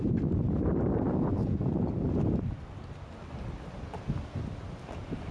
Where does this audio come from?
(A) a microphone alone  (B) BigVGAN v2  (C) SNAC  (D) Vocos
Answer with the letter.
A